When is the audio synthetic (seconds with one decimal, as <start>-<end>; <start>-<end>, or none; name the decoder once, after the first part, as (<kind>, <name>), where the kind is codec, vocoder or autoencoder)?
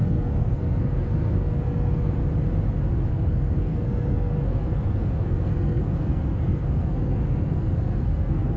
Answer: 0.0-2.2 (codec, SNAC); 3.1-8.6